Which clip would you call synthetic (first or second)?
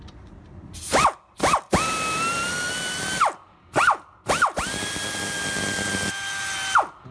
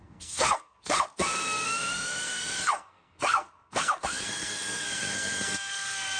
second